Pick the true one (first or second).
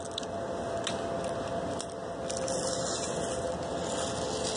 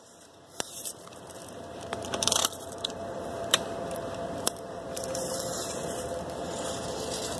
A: first